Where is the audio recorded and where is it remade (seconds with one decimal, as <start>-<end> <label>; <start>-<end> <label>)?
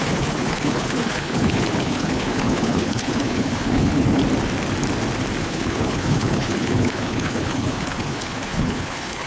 0.0-4.2 remade; 4.2-5.4 recorded; 5.4-9.3 remade